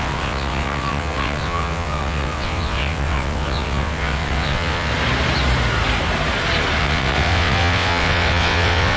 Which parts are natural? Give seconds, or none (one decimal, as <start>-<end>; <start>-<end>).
4.9-6.8